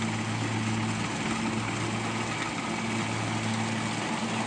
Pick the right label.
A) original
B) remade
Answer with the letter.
A